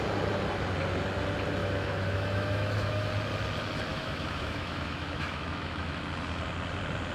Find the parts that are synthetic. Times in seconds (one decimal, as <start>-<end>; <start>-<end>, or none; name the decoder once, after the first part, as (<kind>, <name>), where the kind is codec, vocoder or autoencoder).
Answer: 1.6-3.1 (autoencoder, DAC-VAE); 3.9-6.0